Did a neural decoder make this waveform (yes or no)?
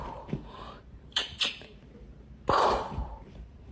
yes